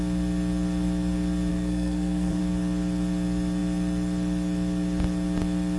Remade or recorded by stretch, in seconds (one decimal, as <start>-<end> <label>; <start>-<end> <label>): 0.0-1.5 recorded; 1.5-2.4 remade; 2.4-5.8 recorded

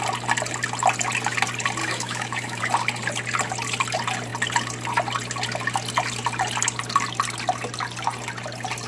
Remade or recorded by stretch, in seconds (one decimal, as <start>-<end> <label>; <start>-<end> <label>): 0.0-1.8 recorded; 1.8-2.6 remade; 2.6-8.9 recorded

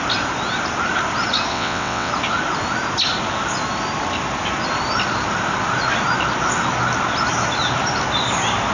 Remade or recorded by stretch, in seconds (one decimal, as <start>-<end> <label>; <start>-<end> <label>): 0.0-1.5 recorded; 1.5-2.1 remade; 2.1-8.7 recorded

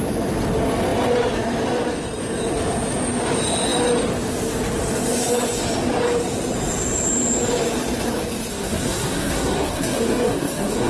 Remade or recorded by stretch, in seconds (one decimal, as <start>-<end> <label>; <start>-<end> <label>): 0.0-8.5 recorded; 8.5-10.9 remade

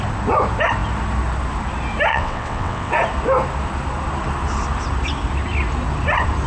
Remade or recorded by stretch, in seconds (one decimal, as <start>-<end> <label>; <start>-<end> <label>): 0.0-2.1 recorded; 2.1-2.9 remade; 2.9-6.5 recorded

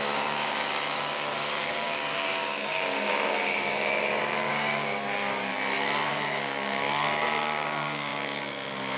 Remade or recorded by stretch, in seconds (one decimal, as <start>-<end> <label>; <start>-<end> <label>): 0.0-5.5 remade; 5.5-6.1 recorded; 6.1-9.0 remade